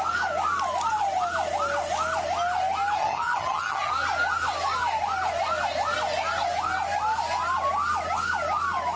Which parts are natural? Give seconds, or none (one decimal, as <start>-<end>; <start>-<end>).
0.0-3.0; 3.9-9.0